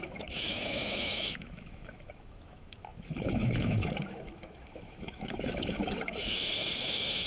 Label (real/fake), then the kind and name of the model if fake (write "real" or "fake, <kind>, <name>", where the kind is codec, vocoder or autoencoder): fake, autoencoder, DAC-VAE